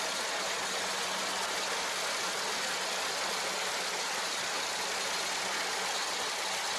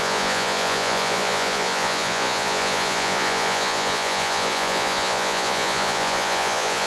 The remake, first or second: second